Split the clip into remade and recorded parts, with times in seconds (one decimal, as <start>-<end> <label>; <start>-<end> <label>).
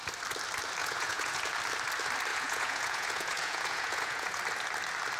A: 0.0-0.8 recorded; 0.8-1.4 remade; 1.4-2.3 recorded; 2.3-4.4 remade; 4.4-5.2 recorded